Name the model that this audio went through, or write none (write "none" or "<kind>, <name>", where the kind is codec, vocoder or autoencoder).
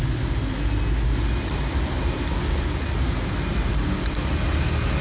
none